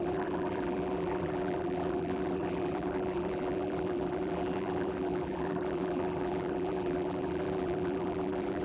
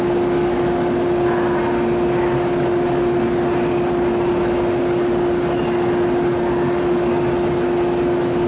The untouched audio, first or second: second